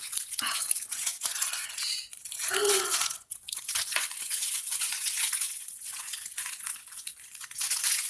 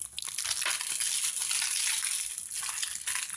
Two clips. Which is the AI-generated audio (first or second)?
first